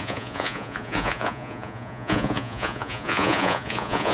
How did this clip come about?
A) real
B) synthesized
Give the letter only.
B